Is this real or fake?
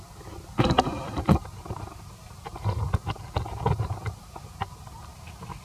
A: real